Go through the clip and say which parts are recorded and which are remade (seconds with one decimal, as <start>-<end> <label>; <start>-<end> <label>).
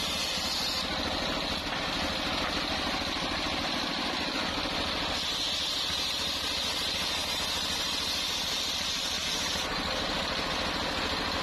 0.0-11.4 recorded